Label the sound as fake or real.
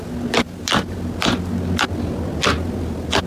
real